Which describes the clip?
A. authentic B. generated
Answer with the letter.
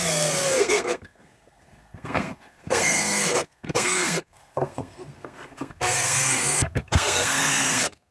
B